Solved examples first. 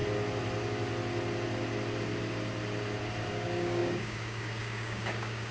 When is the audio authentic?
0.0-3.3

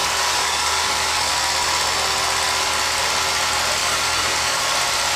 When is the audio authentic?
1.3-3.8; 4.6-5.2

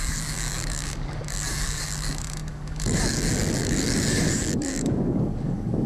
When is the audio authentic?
none

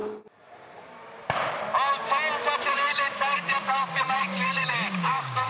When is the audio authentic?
0.0-2.7

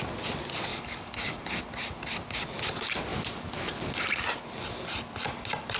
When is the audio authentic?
0.0-0.7; 1.6-5.8

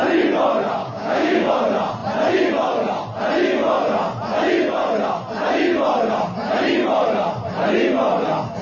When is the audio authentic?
0.0-0.8; 1.5-8.6